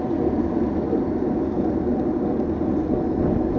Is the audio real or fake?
real